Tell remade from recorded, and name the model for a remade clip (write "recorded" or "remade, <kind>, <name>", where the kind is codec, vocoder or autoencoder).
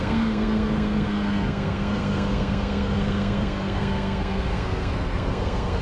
remade, codec, SNAC